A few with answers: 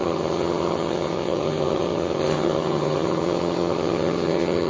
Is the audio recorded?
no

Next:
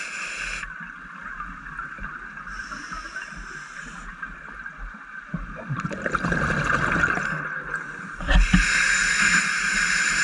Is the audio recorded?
yes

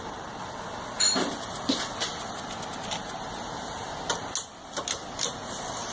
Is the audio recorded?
yes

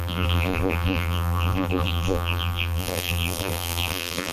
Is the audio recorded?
no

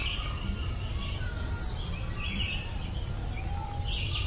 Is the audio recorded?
yes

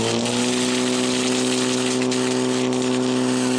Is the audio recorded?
yes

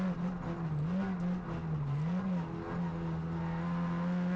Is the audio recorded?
yes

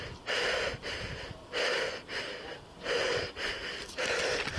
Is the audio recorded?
yes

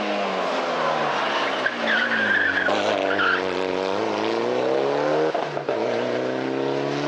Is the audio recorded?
yes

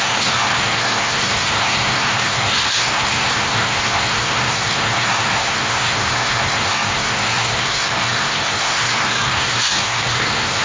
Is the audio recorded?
no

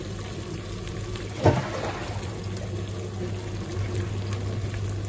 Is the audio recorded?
yes